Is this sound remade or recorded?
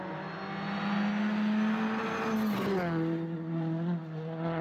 recorded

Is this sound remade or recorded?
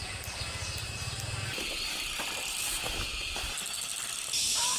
recorded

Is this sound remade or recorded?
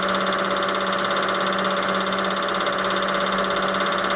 recorded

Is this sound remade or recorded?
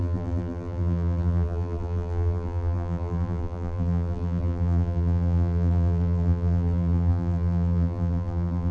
remade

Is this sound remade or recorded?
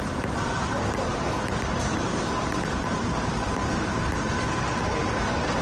remade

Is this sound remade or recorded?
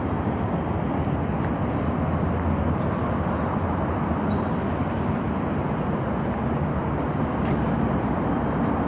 recorded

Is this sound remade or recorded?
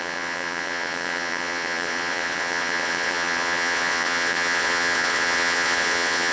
remade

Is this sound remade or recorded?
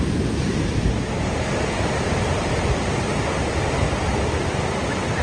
recorded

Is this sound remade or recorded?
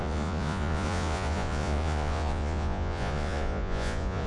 remade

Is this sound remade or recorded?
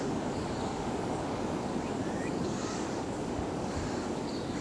remade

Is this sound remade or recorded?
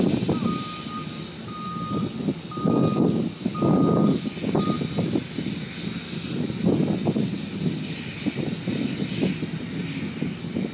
recorded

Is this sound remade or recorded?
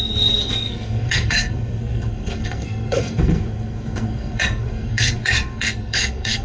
remade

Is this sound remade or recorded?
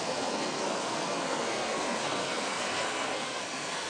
remade